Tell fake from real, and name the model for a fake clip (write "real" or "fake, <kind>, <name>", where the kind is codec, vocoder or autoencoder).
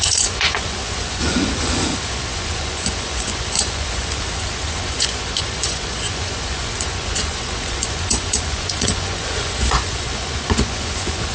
fake, vocoder, Vocos